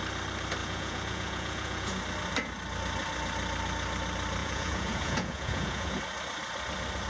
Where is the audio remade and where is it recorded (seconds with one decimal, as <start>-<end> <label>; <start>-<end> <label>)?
0.0-0.6 recorded; 0.6-2.0 remade; 2.0-4.4 recorded; 4.4-6.0 remade; 6.0-7.1 recorded